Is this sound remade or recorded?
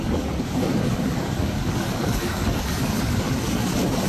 remade